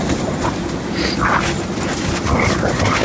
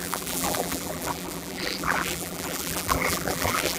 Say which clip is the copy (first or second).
second